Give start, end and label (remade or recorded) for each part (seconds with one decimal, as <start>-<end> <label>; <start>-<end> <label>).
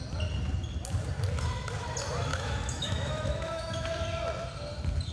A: 0.0-2.3 recorded; 2.3-3.9 remade; 3.9-5.1 recorded